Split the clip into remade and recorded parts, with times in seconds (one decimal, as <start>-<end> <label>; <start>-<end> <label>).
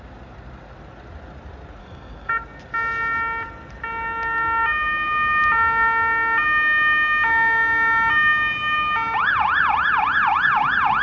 0.0-1.8 recorded; 1.8-2.3 remade; 2.3-11.0 recorded